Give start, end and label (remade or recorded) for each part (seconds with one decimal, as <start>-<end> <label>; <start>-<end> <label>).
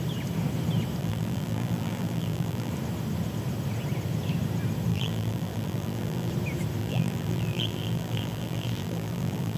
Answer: 0.0-1.0 recorded; 1.0-2.7 remade; 2.7-4.9 recorded; 4.9-6.3 remade; 6.3-6.8 recorded; 6.8-9.6 remade